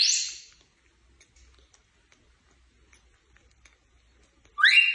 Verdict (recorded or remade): recorded